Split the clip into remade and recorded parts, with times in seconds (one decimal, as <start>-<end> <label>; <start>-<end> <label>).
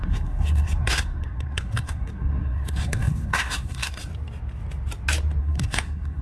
0.0-4.1 remade; 4.1-5.4 recorded; 5.4-6.2 remade